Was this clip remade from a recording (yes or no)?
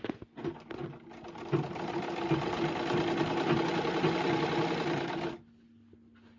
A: no